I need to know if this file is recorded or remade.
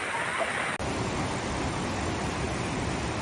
recorded